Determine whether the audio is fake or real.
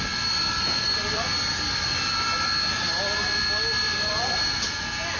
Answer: fake